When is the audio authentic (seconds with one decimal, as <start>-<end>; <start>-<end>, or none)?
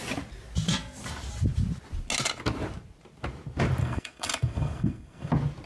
0.0-3.8; 5.3-5.7